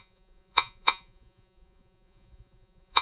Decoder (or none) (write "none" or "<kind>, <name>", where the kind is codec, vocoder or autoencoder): vocoder, Vocos